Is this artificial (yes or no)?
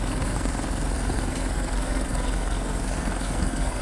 yes